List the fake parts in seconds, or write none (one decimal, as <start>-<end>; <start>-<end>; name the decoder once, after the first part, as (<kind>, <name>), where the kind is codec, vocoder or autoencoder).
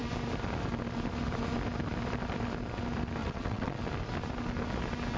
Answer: 3.2-3.8 (vocoder, WaveNeXt)